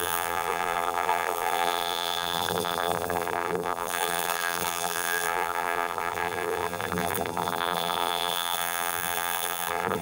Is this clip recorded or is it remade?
remade